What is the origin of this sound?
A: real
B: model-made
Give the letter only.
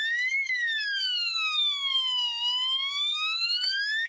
B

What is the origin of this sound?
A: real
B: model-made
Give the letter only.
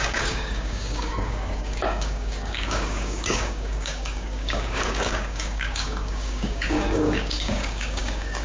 B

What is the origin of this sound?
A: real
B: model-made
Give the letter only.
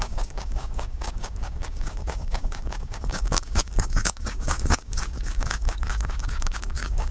B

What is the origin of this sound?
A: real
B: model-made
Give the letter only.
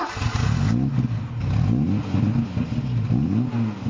A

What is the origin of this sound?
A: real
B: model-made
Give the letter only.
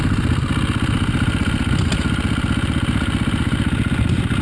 A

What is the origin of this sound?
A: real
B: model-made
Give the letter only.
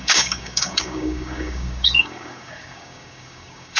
B